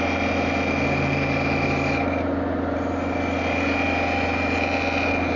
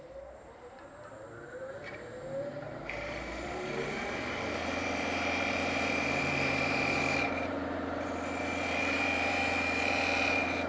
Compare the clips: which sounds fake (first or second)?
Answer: second